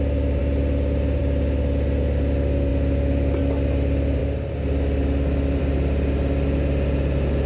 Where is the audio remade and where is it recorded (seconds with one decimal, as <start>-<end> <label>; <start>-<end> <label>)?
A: 0.0-7.5 recorded